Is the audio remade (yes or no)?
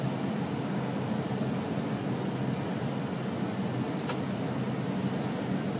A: no